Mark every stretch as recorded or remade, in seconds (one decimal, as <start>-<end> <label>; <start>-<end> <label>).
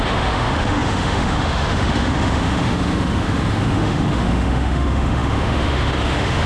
0.0-6.5 remade